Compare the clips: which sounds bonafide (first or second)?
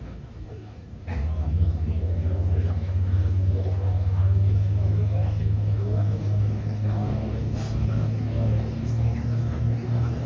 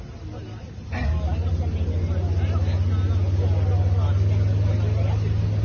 second